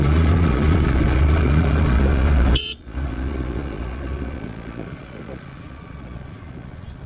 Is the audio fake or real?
fake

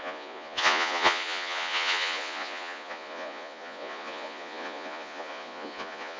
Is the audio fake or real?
fake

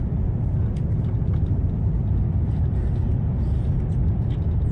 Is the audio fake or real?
real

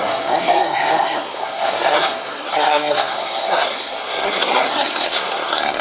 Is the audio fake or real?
fake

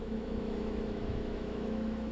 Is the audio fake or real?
fake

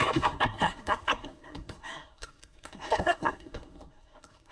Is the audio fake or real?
fake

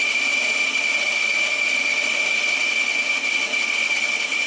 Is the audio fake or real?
real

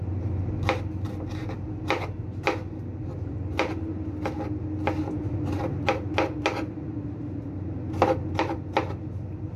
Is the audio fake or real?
real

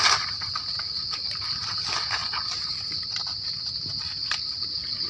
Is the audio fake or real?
real